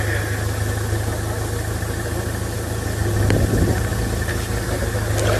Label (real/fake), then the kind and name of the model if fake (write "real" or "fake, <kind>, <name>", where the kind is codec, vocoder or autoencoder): real